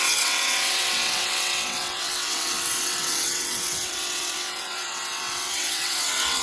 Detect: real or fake fake